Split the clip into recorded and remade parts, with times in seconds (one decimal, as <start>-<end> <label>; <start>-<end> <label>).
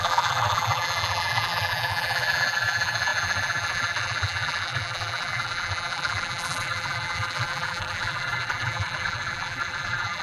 0.0-10.2 remade